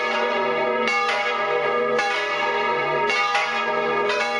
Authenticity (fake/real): fake